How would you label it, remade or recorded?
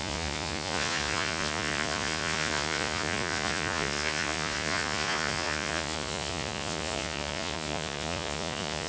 remade